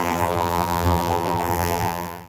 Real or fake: fake